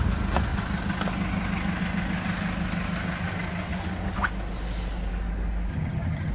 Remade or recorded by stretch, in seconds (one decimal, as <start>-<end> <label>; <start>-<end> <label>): 0.0-5.7 recorded; 5.7-6.3 remade